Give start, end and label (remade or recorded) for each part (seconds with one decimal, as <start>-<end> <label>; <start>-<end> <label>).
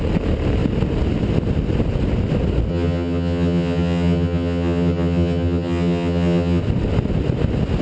0.0-2.7 recorded; 2.7-6.6 remade; 6.6-7.8 recorded